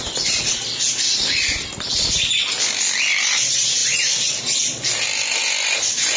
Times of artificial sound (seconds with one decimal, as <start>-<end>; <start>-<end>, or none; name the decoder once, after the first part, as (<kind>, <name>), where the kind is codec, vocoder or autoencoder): 3.8-4.3 (vocoder, BigVGAN v2)